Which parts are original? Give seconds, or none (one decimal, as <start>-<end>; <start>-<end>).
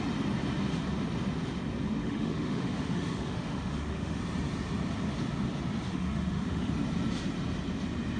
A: 0.0-2.0; 4.2-5.9; 6.7-8.2